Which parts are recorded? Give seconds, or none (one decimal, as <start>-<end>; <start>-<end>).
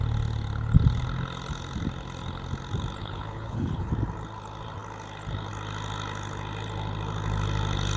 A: 0.0-3.0; 3.9-8.0